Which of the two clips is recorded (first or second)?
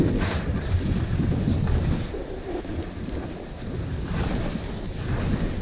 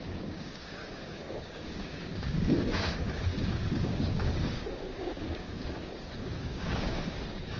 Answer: first